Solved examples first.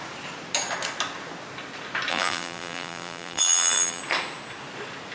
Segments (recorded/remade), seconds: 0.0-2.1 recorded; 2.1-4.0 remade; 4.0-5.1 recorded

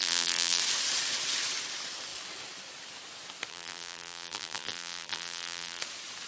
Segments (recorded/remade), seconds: 0.0-0.6 remade; 0.6-3.5 recorded; 3.5-5.8 remade; 5.8-6.3 recorded

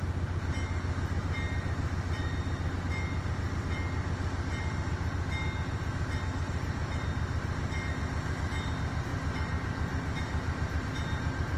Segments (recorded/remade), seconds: 0.0-9.1 recorded; 9.1-10.9 remade; 10.9-11.6 recorded